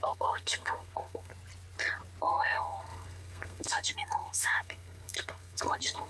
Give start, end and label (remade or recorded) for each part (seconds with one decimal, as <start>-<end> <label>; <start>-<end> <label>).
0.0-1.3 remade; 1.3-2.3 recorded; 2.3-6.1 remade